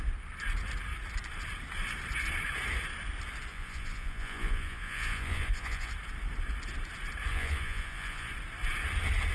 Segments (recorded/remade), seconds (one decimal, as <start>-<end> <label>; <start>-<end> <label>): 0.0-3.5 recorded; 3.5-5.9 remade; 5.9-7.3 recorded; 7.3-8.3 remade; 8.3-9.3 recorded